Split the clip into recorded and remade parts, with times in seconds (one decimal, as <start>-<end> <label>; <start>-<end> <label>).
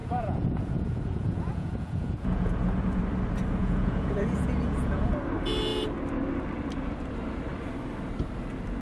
0.0-3.0 remade; 3.0-3.6 recorded; 3.6-5.1 remade; 5.1-8.8 recorded